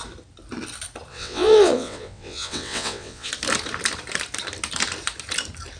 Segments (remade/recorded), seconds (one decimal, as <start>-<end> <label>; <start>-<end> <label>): 0.0-1.1 recorded; 1.1-3.3 remade; 3.3-5.8 recorded